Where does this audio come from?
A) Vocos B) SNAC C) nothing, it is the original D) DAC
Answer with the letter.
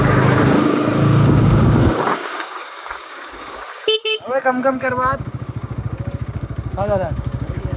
D